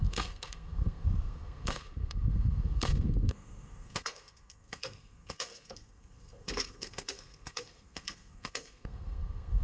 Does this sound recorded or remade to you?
remade